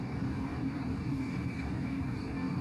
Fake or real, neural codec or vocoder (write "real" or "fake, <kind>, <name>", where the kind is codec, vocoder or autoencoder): fake, codec, DAC